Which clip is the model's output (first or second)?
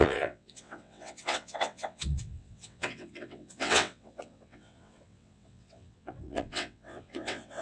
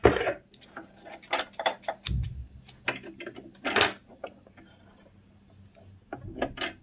first